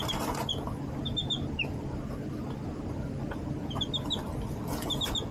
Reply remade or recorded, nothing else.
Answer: recorded